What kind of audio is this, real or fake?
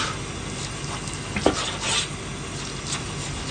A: real